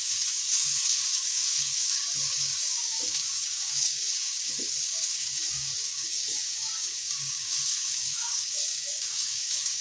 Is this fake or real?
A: fake